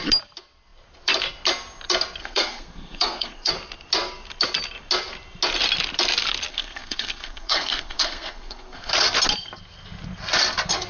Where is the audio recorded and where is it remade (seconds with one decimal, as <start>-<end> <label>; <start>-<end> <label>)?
0.0-2.2 recorded; 2.2-3.5 remade; 3.5-6.5 recorded; 6.5-8.9 remade; 8.9-10.9 recorded

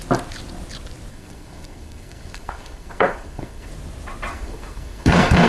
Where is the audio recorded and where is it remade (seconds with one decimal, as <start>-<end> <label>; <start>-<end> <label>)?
0.0-1.1 recorded; 1.1-3.7 remade; 3.7-4.3 recorded; 4.3-5.5 remade

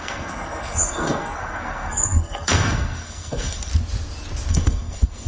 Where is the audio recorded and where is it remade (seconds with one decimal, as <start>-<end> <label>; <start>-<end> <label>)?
0.0-3.7 remade; 3.7-4.5 recorded; 4.5-5.3 remade

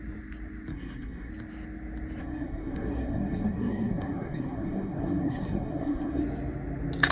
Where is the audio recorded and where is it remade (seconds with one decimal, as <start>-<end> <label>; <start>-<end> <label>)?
0.0-0.7 recorded; 0.7-1.3 remade; 1.3-2.2 recorded; 2.2-6.2 remade; 6.2-7.1 recorded

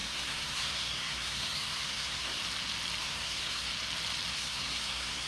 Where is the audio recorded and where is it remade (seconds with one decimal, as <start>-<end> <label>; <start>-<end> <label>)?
0.0-2.4 remade; 2.4-3.0 recorded; 3.0-3.7 remade; 3.7-4.3 recorded; 4.3-5.3 remade

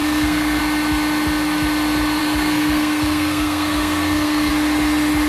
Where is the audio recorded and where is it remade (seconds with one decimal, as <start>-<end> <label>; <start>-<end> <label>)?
0.0-0.6 remade; 0.6-2.2 recorded; 2.2-4.5 remade; 4.5-5.3 recorded

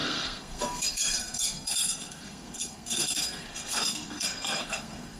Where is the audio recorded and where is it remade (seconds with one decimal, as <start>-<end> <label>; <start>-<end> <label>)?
0.0-5.2 remade

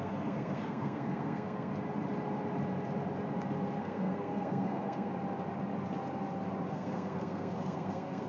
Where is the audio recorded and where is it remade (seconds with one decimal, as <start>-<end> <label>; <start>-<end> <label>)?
0.0-1.7 remade; 1.7-3.8 recorded; 3.8-5.1 remade; 5.1-6.7 recorded; 6.7-8.3 remade